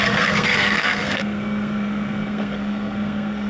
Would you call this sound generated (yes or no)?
yes